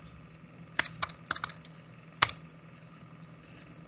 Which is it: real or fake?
real